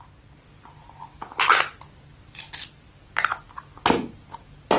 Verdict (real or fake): real